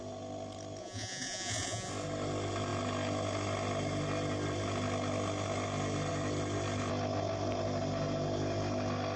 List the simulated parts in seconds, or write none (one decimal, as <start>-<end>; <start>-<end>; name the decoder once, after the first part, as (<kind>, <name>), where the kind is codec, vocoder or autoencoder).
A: 0.8-1.9 (vocoder, Vocos)